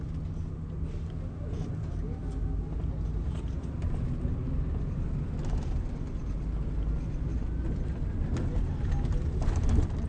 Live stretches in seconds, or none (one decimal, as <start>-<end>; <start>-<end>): 0.0-10.1